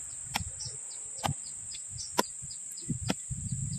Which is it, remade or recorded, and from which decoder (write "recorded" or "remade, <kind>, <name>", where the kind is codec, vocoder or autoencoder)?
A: recorded